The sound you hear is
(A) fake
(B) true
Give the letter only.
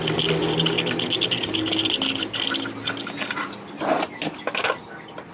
B